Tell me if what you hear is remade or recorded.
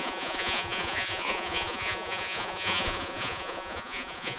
remade